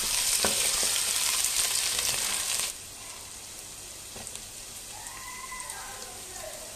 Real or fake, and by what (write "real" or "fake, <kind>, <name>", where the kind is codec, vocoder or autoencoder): real